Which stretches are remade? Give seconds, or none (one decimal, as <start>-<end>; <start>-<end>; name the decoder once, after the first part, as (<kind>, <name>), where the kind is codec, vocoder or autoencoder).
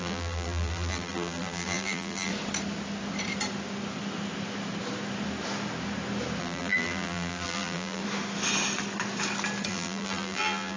0.0-2.3 (vocoder, BigVGAN v2); 6.4-8.0; 9.7-10.8